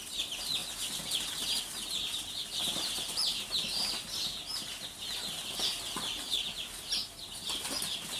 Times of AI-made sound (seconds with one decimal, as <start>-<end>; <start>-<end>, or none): none